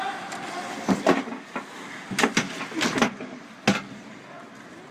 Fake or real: real